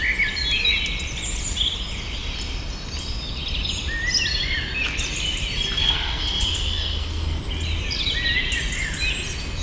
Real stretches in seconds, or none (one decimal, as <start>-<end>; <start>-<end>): 0.0-5.8; 7.4-9.6